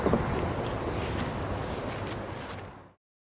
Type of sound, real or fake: real